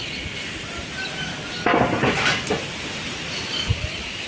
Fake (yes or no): no